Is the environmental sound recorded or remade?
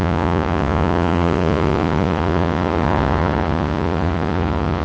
remade